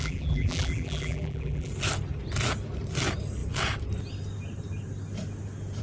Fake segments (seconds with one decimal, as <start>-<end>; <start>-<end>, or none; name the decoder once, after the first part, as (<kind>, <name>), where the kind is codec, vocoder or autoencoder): 0.0-1.7 (vocoder, BigVGAN v2)